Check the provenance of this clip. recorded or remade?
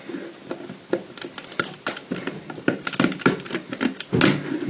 recorded